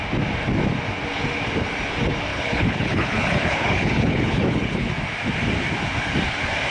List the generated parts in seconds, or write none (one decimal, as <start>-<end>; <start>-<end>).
2.3-4.9